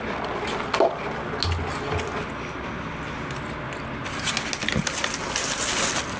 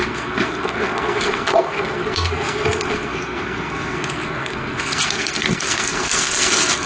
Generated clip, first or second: second